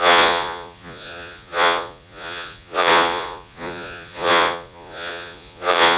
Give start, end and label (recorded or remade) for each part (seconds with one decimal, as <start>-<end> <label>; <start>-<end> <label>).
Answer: 0.0-6.0 remade